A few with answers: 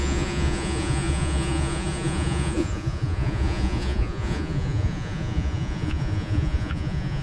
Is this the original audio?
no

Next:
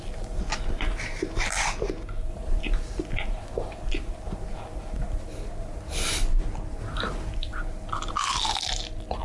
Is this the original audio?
yes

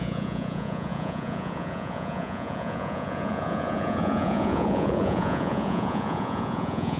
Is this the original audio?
no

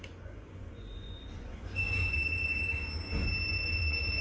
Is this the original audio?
no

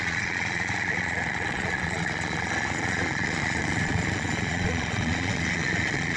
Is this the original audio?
no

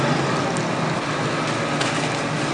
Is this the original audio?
yes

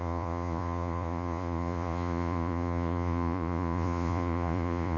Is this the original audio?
no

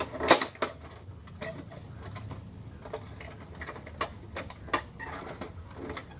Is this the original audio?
yes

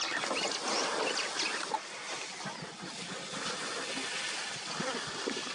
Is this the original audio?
yes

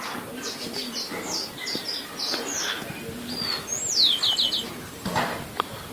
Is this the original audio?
yes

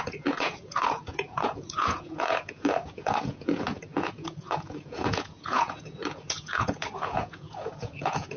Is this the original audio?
no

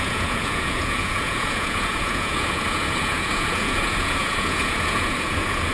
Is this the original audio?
no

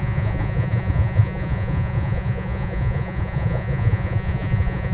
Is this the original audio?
no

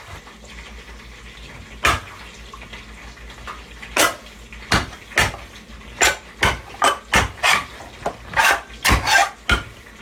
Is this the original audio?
yes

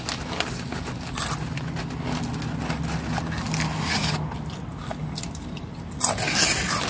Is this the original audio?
yes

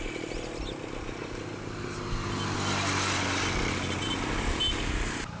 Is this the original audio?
yes